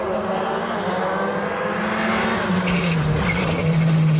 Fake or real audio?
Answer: real